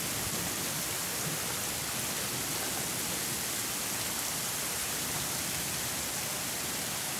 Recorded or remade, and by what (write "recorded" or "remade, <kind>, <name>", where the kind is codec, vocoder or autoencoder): recorded